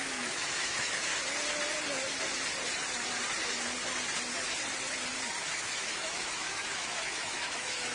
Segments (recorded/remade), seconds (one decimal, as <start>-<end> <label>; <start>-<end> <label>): 0.0-1.1 remade; 1.1-5.4 recorded; 5.4-7.9 remade